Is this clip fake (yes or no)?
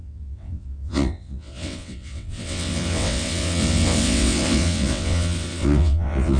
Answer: yes